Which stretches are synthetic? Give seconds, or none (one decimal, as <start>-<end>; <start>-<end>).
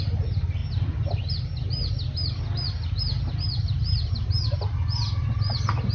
3.0-4.3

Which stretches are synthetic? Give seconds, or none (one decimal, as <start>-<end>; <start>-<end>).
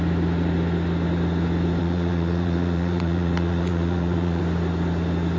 1.8-4.4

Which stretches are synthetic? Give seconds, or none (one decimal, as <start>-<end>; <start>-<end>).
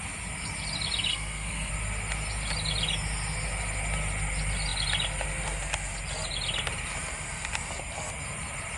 1.1-1.7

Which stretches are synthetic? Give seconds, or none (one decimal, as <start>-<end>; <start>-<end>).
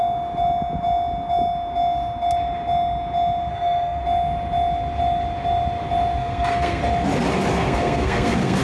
3.5-4.0; 6.2-6.8; 7.5-8.6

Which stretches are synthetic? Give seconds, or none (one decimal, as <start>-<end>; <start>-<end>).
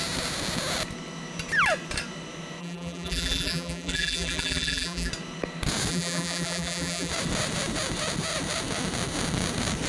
2.6-5.1; 5.9-7.1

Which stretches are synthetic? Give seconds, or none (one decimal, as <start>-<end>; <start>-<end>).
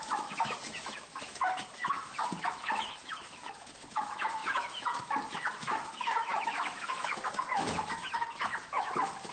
0.0-9.3